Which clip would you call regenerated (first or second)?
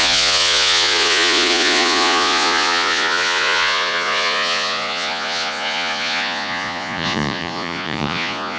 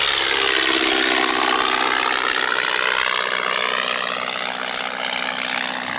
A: first